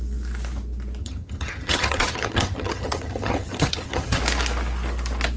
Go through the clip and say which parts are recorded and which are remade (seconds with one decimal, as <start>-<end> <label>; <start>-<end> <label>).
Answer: 0.0-1.0 recorded; 1.0-4.2 remade; 4.2-5.4 recorded